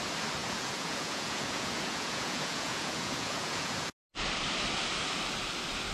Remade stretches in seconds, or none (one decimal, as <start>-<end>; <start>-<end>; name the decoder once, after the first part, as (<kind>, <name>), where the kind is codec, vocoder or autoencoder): 0.4-3.9 (vocoder, Vocos)